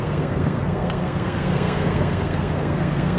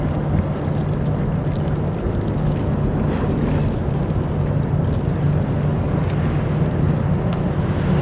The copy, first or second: first